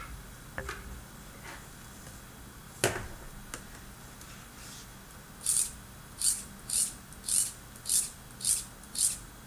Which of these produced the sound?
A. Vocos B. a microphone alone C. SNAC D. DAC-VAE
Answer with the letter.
B